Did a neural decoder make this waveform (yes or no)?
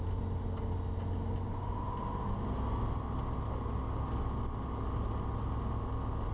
no